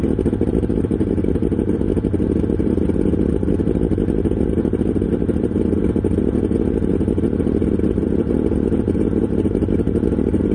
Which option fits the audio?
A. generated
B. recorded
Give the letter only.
B